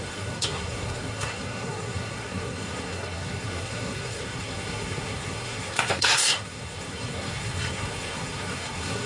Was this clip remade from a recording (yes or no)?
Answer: yes